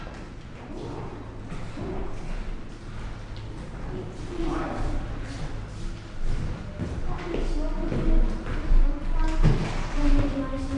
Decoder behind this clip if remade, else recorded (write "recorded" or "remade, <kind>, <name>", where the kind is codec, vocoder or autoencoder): recorded